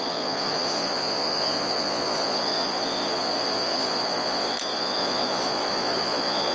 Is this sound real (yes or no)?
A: no